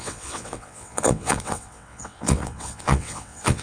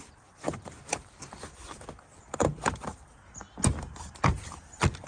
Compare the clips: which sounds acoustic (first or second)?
second